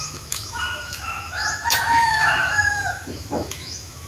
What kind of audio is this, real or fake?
fake